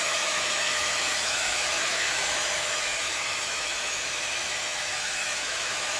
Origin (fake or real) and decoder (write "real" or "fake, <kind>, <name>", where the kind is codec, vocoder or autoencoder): fake, autoencoder, DAC-VAE